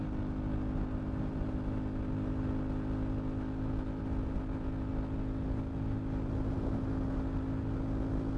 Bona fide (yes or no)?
yes